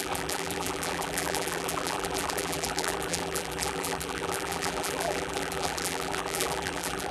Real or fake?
fake